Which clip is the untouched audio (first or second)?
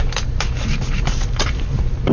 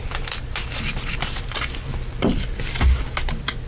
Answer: second